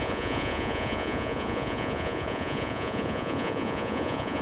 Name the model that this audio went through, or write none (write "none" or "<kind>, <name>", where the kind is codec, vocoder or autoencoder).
vocoder, Vocos